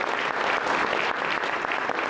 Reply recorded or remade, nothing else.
recorded